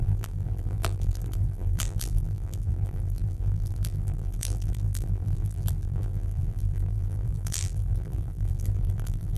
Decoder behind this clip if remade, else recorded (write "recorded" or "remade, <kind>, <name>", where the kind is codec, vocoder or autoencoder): remade, vocoder, BigVGAN v2